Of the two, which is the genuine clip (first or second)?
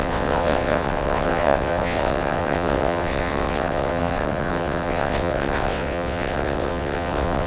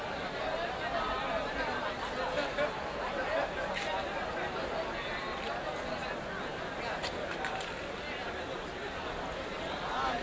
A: second